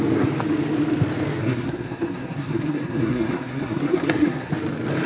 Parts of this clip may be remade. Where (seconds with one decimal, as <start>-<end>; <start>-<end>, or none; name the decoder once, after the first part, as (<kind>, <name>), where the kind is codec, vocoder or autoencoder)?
1.4-4.5 (codec, SNAC)